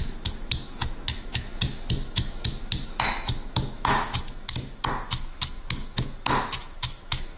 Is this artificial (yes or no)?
yes